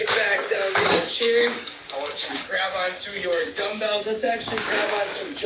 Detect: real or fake fake